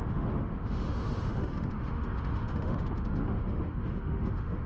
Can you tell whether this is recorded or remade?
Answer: remade